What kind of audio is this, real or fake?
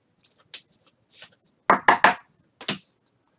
real